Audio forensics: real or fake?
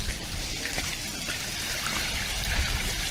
fake